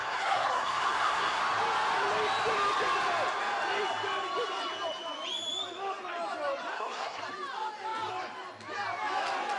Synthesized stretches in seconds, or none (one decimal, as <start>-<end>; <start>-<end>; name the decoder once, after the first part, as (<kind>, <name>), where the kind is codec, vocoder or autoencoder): 0.0-1.4 (codec, SNAC); 6.7-7.2